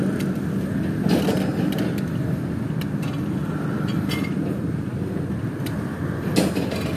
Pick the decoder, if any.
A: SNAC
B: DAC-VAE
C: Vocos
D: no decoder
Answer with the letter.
D